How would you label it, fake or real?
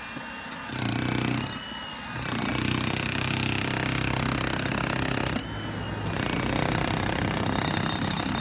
real